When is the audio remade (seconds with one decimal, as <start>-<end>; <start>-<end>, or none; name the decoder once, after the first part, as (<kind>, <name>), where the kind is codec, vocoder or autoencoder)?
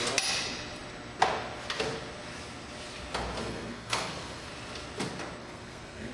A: 3.4-4.5 (codec, SNAC); 5.4-6.1